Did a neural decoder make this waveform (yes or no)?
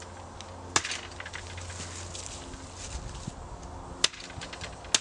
no